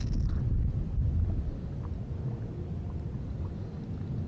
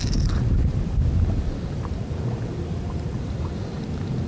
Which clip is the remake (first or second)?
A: second